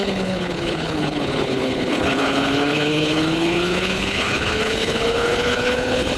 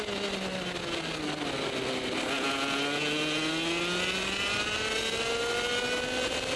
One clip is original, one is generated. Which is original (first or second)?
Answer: second